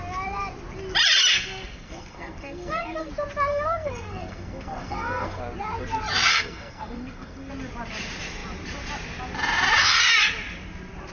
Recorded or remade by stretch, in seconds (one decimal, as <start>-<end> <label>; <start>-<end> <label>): 0.0-1.3 recorded; 1.3-3.1 remade; 3.1-3.5 recorded; 3.5-5.4 remade; 5.4-6.3 recorded; 6.3-7.5 remade; 7.5-11.1 recorded